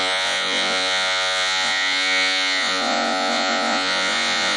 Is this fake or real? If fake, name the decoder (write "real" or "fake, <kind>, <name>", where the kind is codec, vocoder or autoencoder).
fake, vocoder, Vocos